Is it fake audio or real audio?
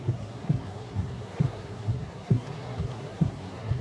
fake